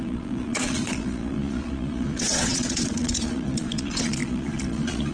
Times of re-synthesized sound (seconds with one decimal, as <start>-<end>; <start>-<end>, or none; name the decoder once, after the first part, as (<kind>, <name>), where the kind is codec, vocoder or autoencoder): 0.0-5.1 (vocoder, Vocos)